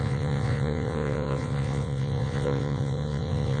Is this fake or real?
fake